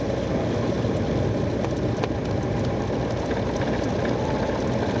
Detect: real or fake real